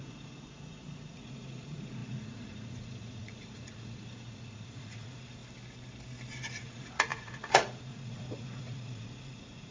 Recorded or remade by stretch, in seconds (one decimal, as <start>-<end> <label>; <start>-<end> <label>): 0.0-5.4 remade; 5.4-6.5 recorded; 6.5-9.7 remade